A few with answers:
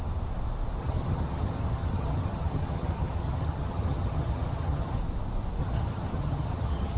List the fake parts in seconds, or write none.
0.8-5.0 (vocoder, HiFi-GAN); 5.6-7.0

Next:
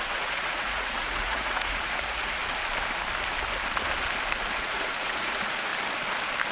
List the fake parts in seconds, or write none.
0.0-2.4 (vocoder, Vocos); 4.6-5.7

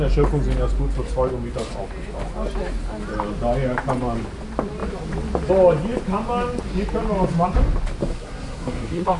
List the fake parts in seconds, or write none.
8.0-9.2 (codec, SNAC)

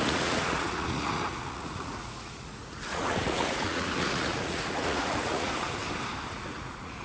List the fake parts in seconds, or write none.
0.0-5.8 (vocoder, Vocos); 6.3-7.0

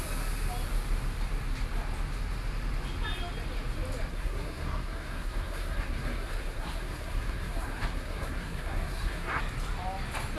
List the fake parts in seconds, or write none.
4.1-9.4 (codec, SNAC)

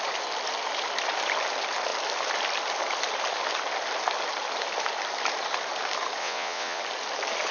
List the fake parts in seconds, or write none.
6.2-6.8 (vocoder, WaveNeXt)

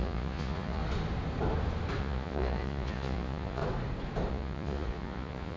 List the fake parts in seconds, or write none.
0.0-0.8 (vocoder, Vocos); 2.0-3.6; 4.3-5.6